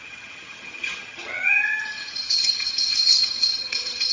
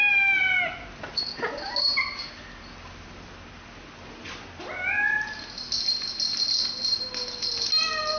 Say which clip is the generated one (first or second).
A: first